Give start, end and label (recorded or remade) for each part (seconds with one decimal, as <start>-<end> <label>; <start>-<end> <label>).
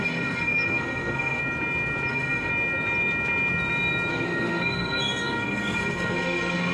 0.0-1.4 remade; 1.4-2.1 recorded; 2.1-2.5 remade; 2.5-4.1 recorded; 4.1-6.7 remade